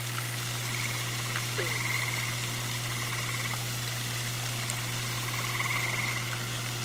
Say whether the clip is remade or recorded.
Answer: recorded